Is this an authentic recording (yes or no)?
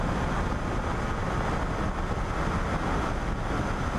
yes